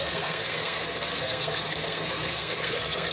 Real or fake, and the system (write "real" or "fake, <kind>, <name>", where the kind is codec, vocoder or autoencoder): fake, codec, SNAC